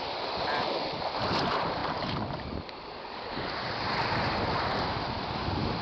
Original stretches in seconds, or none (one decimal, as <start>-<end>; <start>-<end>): 0.0-5.8